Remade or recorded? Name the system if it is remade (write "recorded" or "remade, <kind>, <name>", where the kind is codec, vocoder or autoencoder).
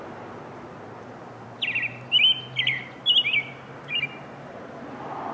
recorded